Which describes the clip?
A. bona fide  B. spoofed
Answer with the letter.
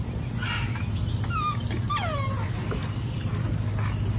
A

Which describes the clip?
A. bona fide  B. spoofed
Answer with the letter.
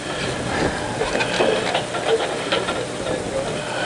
A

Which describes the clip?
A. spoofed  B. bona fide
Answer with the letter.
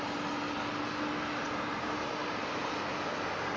B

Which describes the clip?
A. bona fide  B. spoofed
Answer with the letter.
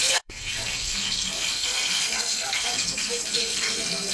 B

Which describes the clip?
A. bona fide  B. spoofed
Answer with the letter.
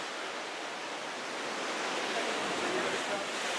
A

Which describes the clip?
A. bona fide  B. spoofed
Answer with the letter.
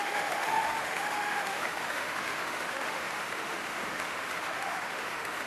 B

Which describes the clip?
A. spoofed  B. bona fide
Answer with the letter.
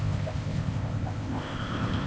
A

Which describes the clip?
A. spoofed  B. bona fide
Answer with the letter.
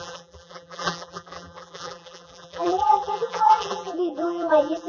A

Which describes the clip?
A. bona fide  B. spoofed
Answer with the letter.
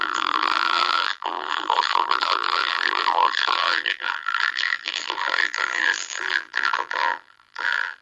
B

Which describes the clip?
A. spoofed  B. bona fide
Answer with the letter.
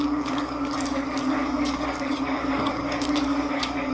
A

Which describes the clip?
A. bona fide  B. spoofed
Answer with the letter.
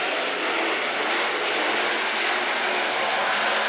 A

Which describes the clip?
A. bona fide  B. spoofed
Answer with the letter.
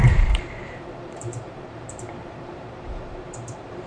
B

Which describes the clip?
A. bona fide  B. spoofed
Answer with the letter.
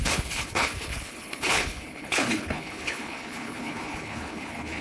B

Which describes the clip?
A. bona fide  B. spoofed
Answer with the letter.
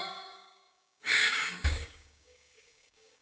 B